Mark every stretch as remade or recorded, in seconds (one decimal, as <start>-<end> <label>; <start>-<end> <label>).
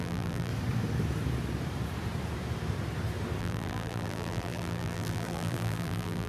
0.0-0.5 remade; 0.5-3.4 recorded; 3.4-6.3 remade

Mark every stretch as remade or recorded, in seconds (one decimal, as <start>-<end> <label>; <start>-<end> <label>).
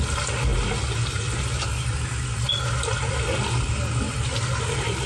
0.0-5.1 recorded